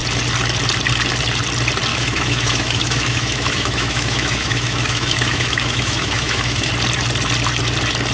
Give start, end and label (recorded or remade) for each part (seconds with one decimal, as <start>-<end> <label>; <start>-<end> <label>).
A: 0.0-1.9 recorded; 1.9-6.7 remade; 6.7-8.1 recorded